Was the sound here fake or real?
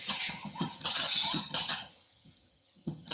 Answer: fake